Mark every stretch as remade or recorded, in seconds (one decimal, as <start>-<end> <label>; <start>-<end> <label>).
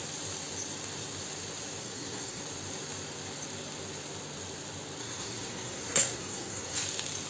0.0-1.8 recorded; 1.8-2.4 remade; 2.4-5.0 recorded; 5.0-6.8 remade; 6.8-7.3 recorded